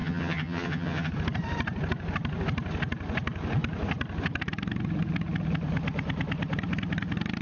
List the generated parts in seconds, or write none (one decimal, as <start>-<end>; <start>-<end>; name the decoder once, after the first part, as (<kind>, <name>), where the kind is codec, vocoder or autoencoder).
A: 0.0-1.1 (vocoder, HiFi-GAN)